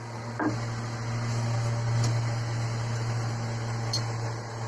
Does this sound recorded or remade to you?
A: recorded